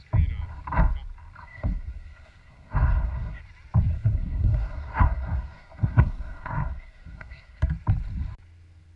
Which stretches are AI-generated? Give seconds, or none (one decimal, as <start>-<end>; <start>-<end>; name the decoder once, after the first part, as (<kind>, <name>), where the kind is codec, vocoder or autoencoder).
1.4-3.4 (codec, SNAC); 3.9-7.6